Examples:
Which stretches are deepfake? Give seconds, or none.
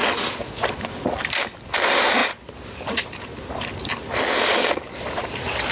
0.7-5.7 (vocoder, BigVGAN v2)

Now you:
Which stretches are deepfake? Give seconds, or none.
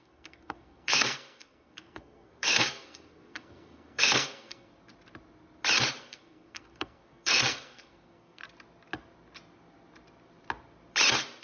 0.0-4.7 (codec, SNAC); 6.0-8.4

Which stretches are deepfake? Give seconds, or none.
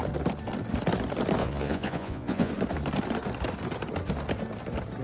1.4-2.5 (vocoder, Vocos)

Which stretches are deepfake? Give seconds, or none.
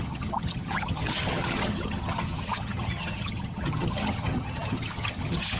0.0-5.6 (vocoder, HiFi-GAN)